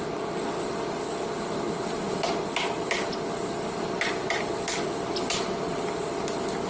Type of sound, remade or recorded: recorded